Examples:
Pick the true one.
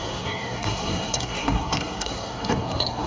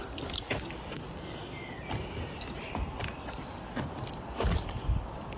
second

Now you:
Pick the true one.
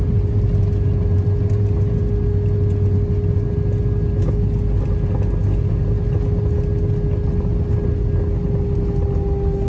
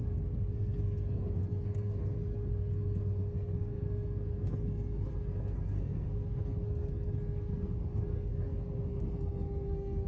first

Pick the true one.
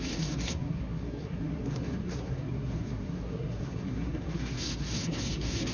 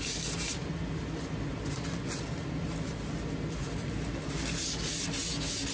second